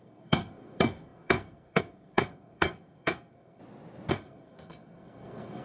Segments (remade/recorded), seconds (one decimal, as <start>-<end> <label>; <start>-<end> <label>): 0.0-3.6 remade; 3.6-4.1 recorded; 4.1-5.6 remade